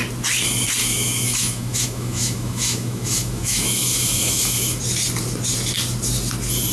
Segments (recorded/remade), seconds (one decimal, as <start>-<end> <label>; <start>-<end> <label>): 0.0-0.8 recorded; 0.8-4.8 remade; 4.8-6.7 recorded